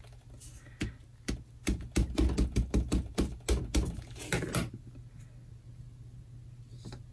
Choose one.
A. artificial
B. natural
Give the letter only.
B